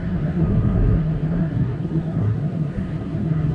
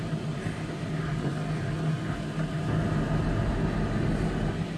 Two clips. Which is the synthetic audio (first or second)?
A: first